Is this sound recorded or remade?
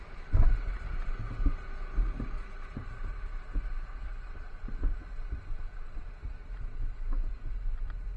recorded